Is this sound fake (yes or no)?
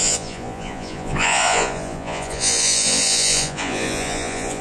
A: yes